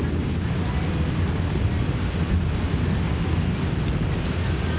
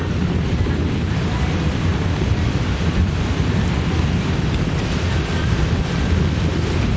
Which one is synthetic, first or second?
second